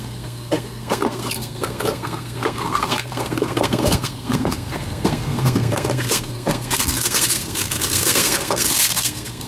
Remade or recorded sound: remade